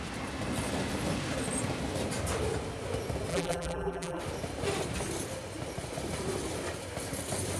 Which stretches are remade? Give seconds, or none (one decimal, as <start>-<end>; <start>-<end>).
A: 3.3-4.2